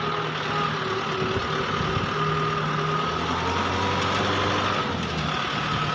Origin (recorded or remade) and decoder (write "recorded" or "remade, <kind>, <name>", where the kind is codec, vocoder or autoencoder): recorded